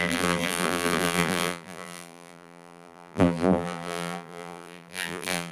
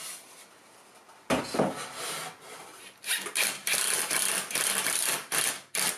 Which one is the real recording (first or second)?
second